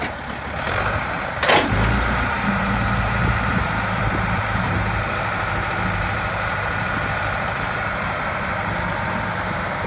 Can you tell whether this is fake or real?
fake